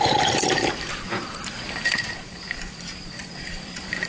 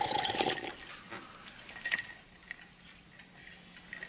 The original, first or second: second